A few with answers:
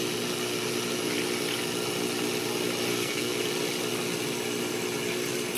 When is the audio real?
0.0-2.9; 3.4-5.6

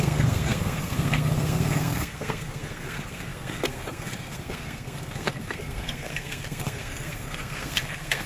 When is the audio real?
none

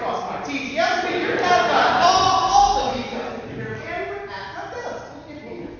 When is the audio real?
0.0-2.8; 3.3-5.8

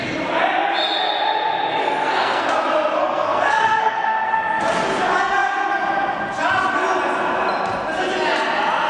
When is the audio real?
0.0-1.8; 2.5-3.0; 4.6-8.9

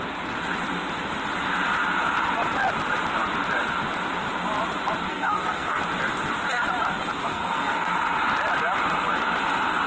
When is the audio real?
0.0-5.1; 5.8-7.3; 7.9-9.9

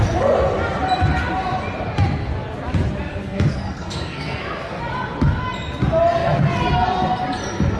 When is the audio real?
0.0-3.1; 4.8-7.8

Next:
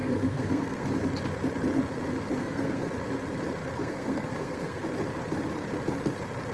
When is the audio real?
0.9-2.4; 2.9-3.8; 4.8-6.5

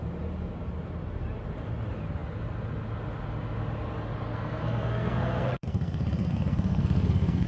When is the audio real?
0.0-4.3